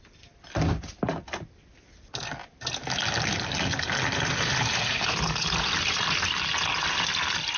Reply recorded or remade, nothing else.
recorded